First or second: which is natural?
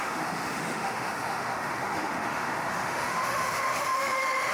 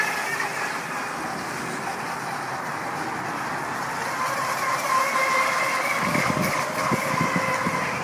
second